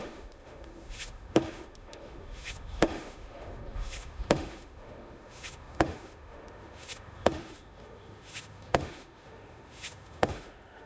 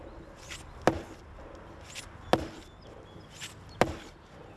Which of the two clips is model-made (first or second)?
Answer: first